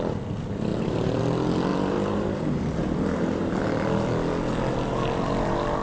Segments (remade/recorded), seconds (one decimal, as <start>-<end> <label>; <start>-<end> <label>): 0.0-0.7 recorded; 0.7-1.2 remade; 1.2-1.7 recorded; 1.7-3.6 remade; 3.6-5.8 recorded